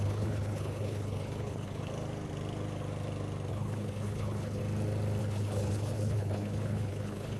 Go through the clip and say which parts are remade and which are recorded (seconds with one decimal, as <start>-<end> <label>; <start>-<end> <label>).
0.0-1.9 remade; 1.9-3.5 recorded; 3.5-4.6 remade; 4.6-5.2 recorded; 5.2-7.4 remade